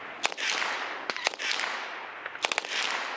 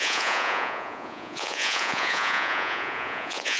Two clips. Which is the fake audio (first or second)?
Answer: second